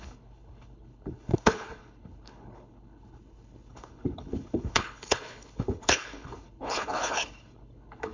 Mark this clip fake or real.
fake